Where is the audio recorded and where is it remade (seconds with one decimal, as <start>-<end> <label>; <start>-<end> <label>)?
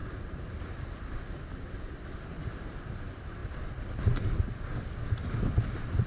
0.0-0.6 remade; 0.6-6.1 recorded